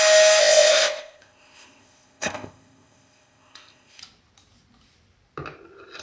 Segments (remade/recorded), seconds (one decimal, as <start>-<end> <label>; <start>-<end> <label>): 0.0-0.4 recorded; 0.4-4.0 remade; 4.0-6.0 recorded